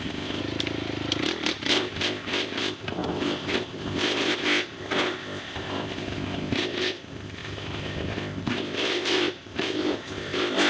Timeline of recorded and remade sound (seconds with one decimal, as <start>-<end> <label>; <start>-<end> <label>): 0.0-0.4 remade; 0.4-1.7 recorded; 1.7-10.7 remade